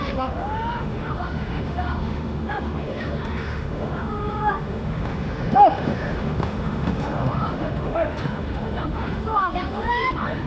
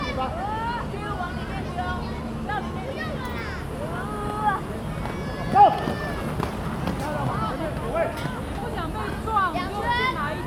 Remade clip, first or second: first